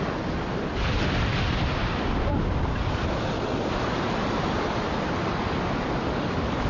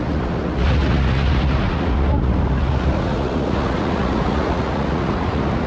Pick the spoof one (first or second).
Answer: second